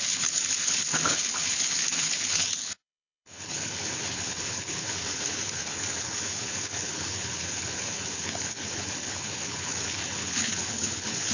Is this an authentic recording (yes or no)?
no